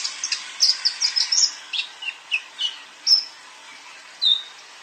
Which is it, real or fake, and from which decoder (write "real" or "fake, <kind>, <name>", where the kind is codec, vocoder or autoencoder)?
real